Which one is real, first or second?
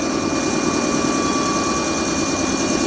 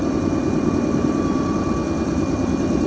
first